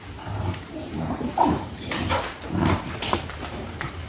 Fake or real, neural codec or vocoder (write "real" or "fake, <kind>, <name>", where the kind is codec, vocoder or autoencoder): fake, vocoder, BigVGAN v2